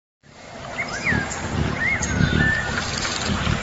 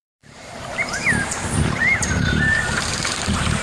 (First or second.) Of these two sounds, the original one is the first